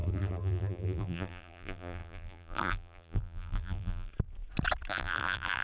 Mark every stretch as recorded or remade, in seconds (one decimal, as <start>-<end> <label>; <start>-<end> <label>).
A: 0.0-4.1 remade; 4.1-4.9 recorded; 4.9-5.6 remade